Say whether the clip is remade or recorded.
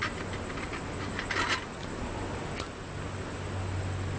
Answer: recorded